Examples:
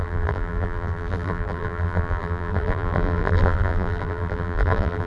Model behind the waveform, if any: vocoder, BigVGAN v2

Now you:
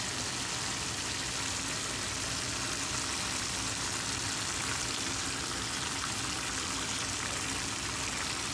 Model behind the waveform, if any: none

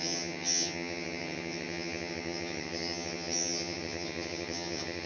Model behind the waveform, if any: vocoder, HiFi-GAN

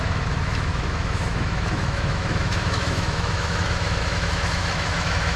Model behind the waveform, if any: autoencoder, DAC-VAE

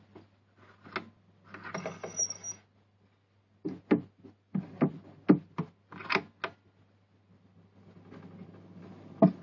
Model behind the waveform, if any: none